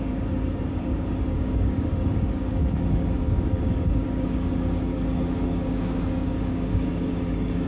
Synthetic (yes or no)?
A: yes